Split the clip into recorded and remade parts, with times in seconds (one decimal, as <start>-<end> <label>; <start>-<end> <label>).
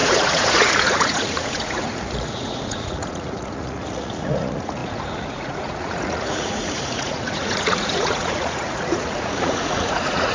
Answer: 0.0-10.3 remade